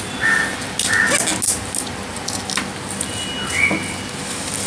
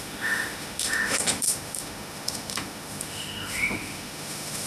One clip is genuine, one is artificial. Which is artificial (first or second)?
second